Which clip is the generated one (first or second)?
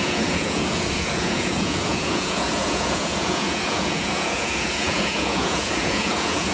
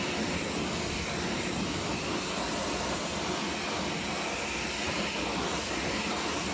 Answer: first